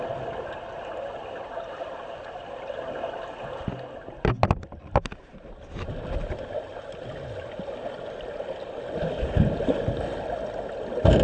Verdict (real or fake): real